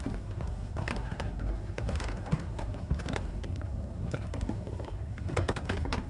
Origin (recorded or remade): remade